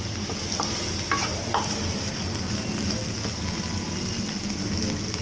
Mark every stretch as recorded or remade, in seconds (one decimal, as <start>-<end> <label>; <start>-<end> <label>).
0.0-5.2 recorded

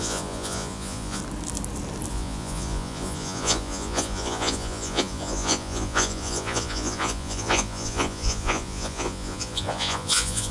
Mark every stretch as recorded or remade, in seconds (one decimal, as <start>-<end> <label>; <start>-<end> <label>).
0.0-1.2 remade; 1.2-2.1 recorded; 2.1-10.5 remade

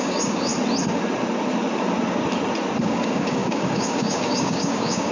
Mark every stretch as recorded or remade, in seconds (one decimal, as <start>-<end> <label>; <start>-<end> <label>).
0.0-0.5 remade; 0.5-2.8 recorded; 2.8-5.1 remade

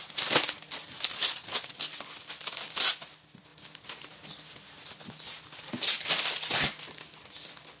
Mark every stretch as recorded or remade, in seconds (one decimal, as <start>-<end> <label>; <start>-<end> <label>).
0.0-1.1 recorded; 1.1-1.8 remade; 1.8-7.8 recorded

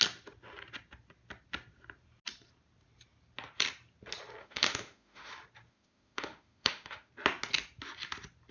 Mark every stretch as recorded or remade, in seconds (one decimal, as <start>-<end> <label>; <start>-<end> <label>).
0.0-4.4 recorded; 4.4-5.3 remade; 5.3-5.7 recorded; 5.7-7.1 remade; 7.1-8.5 recorded